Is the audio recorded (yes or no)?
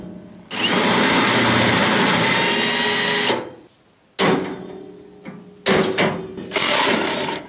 yes